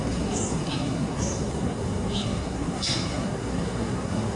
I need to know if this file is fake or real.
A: fake